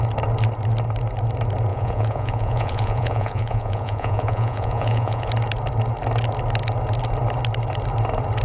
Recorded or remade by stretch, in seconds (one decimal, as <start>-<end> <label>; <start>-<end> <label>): 0.0-1.7 recorded; 1.7-5.3 remade; 5.3-8.4 recorded

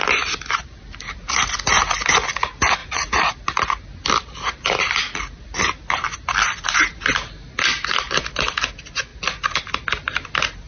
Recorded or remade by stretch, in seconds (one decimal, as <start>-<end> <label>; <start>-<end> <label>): 0.0-2.8 recorded; 2.8-3.3 remade; 3.3-10.7 recorded

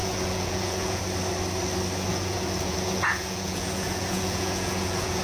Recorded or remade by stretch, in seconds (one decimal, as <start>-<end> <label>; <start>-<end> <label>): 0.0-1.0 remade; 1.0-2.1 recorded; 2.1-5.2 remade

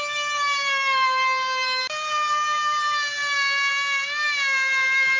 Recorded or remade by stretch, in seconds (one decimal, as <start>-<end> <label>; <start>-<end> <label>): 0.0-5.2 recorded

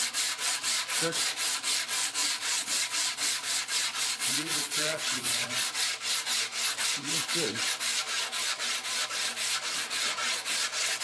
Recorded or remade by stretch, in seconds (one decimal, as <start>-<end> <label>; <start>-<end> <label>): 0.0-2.2 recorded; 2.2-5.5 remade; 5.5-11.0 recorded

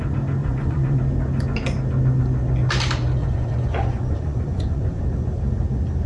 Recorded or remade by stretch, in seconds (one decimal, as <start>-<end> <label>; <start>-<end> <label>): 0.0-0.4 recorded; 0.4-1.0 remade; 1.0-3.2 recorded; 3.2-5.0 remade; 5.0-6.1 recorded

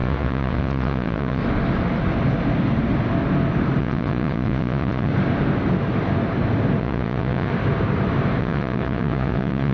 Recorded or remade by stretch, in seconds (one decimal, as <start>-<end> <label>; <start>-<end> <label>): 0.0-1.4 remade; 1.4-3.8 recorded; 3.8-5.1 remade; 5.1-6.8 recorded; 6.8-7.5 remade; 7.5-8.4 recorded; 8.4-9.7 remade

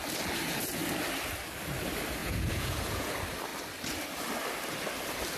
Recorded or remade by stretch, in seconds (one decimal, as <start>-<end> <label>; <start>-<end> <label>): 0.0-2.2 recorded; 2.2-3.1 remade; 3.1-5.4 recorded